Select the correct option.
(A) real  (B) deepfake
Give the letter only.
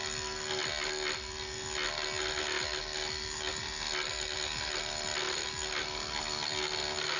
A